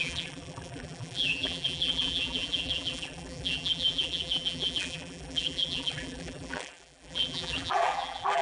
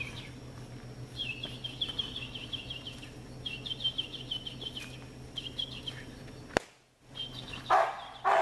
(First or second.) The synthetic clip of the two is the first